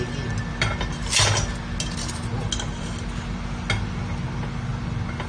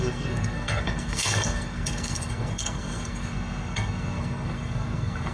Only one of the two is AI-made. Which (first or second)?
second